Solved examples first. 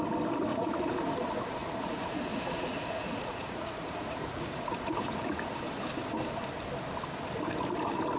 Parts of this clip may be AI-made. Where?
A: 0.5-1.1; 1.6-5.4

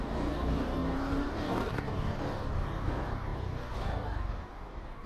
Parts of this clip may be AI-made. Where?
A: 0.0-5.1

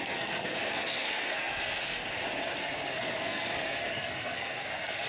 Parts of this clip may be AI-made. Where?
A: 0.0-2.0; 2.6-5.1